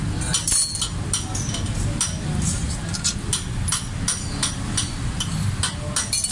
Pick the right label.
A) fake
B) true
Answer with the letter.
B